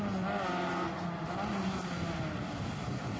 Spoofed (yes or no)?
no